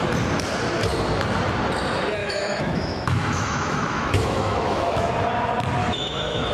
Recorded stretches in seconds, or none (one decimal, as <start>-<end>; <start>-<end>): 0.0-2.2; 5.1-5.8